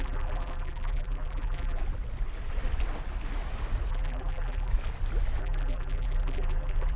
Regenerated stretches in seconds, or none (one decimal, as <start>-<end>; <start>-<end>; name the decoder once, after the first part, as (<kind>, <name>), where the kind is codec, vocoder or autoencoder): 0.0-1.8 (vocoder, BigVGAN v2); 3.9-4.7; 5.4-7.0